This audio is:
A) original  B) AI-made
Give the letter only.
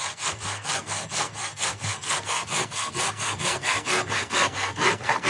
B